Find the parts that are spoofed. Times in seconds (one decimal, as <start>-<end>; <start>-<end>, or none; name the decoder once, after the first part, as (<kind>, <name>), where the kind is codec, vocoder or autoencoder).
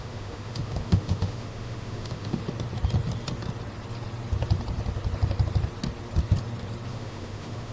0.0-2.4 (autoencoder, DAC-VAE); 6.9-7.7